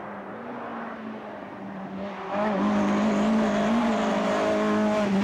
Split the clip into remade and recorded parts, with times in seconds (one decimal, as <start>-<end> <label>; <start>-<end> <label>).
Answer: 0.0-5.2 recorded